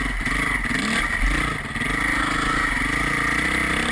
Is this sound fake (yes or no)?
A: no